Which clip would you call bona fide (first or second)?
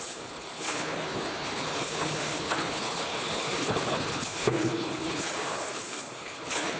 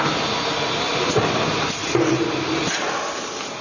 second